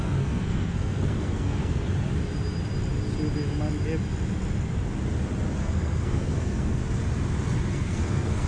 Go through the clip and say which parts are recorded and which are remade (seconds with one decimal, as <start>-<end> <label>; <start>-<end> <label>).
0.0-1.9 remade; 1.9-5.6 recorded; 5.6-6.8 remade; 6.8-7.7 recorded; 7.7-8.5 remade